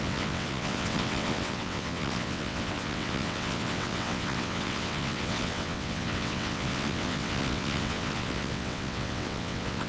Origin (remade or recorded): remade